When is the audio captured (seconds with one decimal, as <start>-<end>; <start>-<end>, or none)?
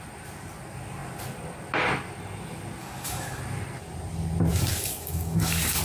0.0-2.8; 3.4-4.5